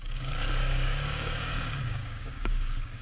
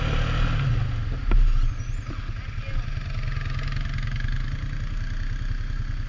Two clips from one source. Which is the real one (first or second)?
second